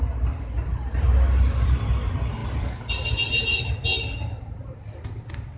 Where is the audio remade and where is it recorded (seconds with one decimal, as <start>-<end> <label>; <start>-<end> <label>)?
0.0-0.7 recorded; 0.7-1.9 remade; 1.9-2.4 recorded; 2.4-3.7 remade; 3.7-5.6 recorded